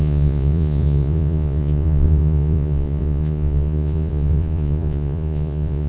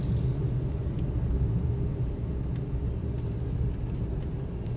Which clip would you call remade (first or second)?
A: first